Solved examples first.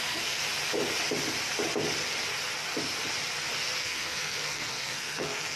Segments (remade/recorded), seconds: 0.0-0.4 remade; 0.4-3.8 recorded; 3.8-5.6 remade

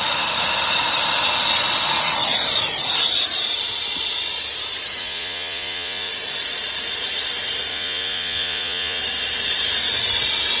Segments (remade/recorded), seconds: 0.0-5.0 recorded; 5.0-6.1 remade; 6.1-7.7 recorded; 7.7-9.0 remade; 9.0-10.6 recorded

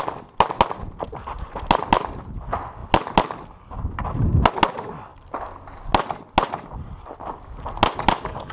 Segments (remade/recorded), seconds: 0.0-8.5 recorded